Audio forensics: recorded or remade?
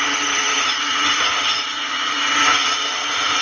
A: remade